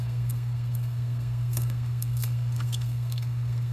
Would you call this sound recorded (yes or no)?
no